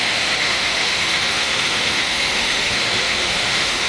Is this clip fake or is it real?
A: fake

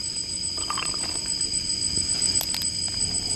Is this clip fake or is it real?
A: real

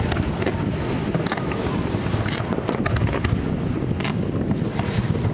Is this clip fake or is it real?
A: real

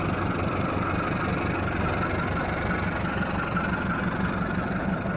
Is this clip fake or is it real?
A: real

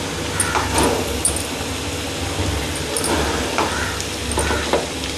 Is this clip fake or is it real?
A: real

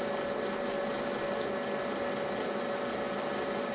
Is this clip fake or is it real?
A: real